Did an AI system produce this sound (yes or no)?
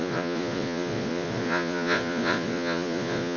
yes